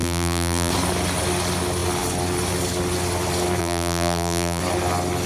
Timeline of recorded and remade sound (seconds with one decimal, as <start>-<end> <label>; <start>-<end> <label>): 0.0-0.7 remade; 0.7-3.6 recorded; 3.6-4.6 remade; 4.6-5.3 recorded